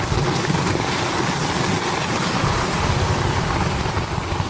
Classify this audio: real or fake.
real